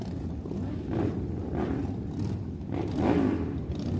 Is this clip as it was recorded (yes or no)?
yes